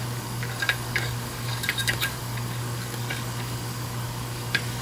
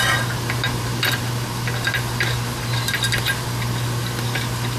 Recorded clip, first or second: second